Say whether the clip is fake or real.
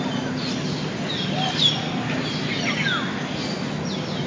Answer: real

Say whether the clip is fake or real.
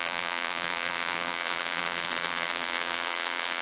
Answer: fake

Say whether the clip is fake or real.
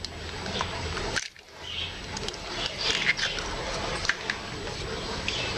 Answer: real